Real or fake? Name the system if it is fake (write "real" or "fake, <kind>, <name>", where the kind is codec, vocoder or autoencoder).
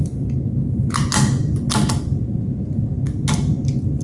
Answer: real